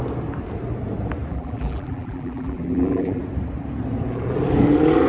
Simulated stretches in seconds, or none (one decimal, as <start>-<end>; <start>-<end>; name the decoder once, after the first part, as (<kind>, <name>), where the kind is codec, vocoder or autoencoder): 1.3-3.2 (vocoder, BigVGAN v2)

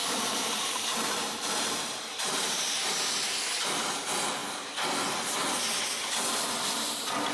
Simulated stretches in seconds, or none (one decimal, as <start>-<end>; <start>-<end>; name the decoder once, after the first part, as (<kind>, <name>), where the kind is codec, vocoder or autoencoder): 0.0-3.8 (vocoder, BigVGAN v2)

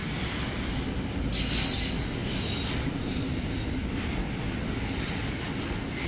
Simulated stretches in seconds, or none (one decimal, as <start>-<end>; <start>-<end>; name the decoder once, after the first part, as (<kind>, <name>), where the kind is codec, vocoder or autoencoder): 0.0-1.2 (vocoder, BigVGAN v2)

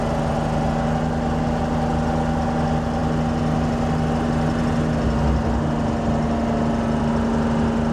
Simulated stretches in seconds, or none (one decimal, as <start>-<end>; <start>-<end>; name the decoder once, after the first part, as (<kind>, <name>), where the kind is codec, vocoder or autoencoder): none